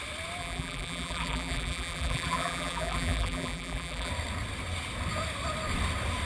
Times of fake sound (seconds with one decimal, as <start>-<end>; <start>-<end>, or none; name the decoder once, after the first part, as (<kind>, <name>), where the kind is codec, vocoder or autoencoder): 0.4-4.1 (vocoder, BigVGAN v2)